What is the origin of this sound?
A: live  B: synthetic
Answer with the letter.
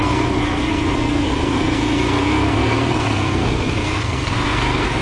B